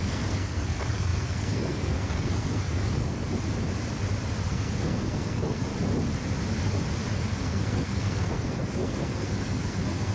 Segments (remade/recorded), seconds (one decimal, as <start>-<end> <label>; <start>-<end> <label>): 0.0-3.2 remade; 3.2-4.5 recorded; 4.5-5.7 remade; 5.7-7.3 recorded; 7.3-10.1 remade